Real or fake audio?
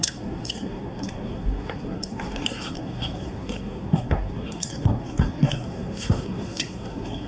fake